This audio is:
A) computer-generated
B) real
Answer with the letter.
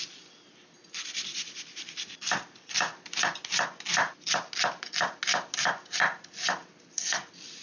B